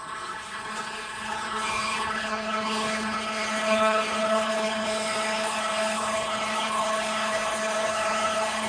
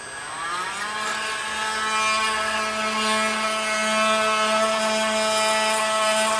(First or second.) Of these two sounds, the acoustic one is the second